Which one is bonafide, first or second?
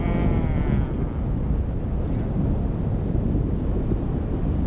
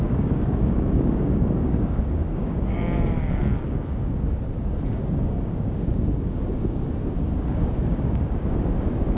first